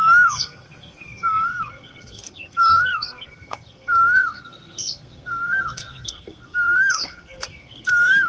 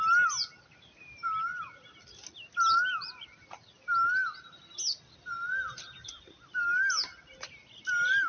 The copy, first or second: first